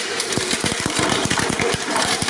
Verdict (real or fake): fake